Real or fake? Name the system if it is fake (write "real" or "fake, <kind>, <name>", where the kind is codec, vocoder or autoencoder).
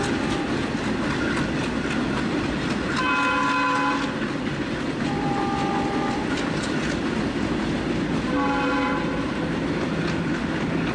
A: real